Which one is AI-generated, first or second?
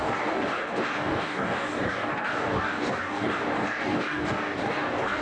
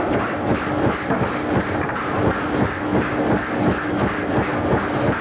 first